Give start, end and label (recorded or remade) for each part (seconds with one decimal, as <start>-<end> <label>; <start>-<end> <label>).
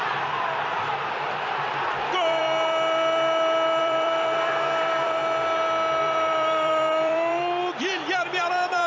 0.0-2.4 remade; 2.4-3.8 recorded; 3.8-5.2 remade; 5.2-6.0 recorded; 6.0-8.9 remade